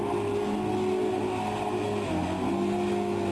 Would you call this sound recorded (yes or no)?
yes